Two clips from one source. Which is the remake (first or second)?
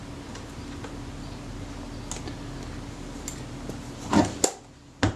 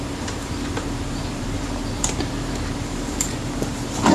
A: second